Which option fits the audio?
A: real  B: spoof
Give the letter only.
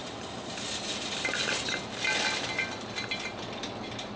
B